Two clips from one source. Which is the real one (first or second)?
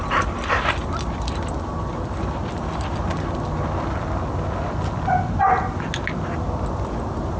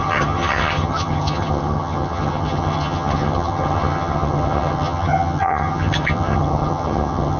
first